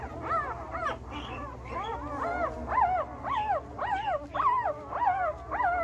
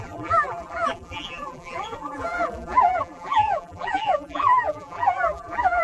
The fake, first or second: second